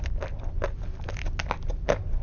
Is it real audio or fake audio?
real